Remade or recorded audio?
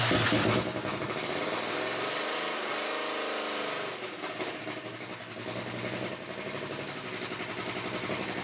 recorded